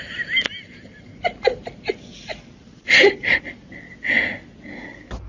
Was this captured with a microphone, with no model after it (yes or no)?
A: yes